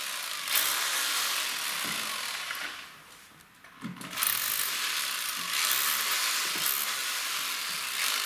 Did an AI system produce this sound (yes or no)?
no